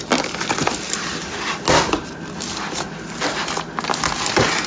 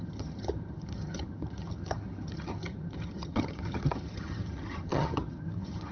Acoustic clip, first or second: first